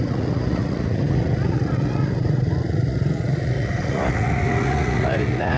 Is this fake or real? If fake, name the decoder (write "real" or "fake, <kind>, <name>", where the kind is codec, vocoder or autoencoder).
fake, vocoder, Vocos